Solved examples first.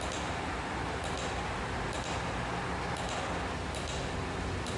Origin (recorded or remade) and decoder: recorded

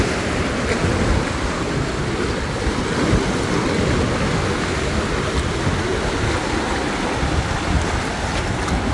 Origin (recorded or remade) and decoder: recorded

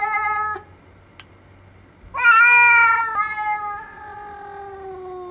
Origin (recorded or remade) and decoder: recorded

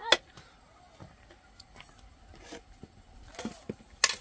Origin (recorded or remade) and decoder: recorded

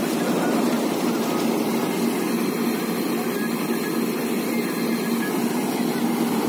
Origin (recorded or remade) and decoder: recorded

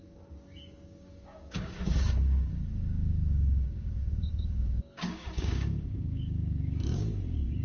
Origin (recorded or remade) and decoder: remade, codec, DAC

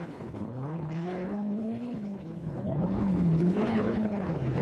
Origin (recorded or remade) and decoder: remade, codec, HILCodec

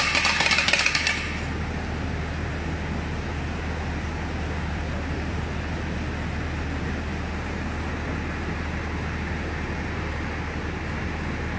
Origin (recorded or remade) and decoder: recorded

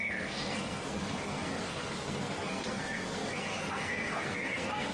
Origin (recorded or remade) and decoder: remade, codec, SNAC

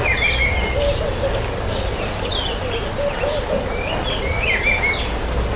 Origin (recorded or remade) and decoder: recorded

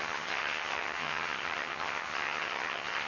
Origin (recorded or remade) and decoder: remade, vocoder, HiFi-GAN